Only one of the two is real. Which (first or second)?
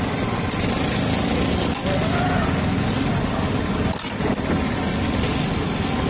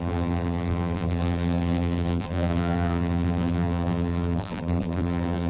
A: first